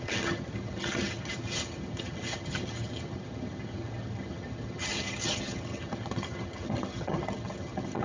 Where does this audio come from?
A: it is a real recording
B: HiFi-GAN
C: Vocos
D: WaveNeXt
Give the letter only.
B